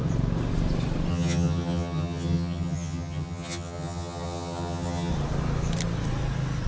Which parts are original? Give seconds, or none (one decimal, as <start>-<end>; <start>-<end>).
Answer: 0.0-1.1; 5.1-6.7